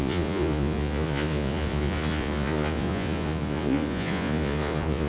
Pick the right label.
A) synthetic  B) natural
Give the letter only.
A